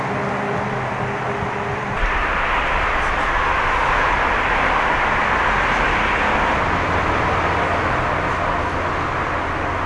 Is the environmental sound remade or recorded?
recorded